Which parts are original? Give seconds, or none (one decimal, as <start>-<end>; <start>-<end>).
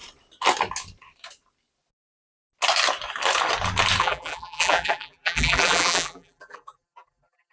0.0-4.0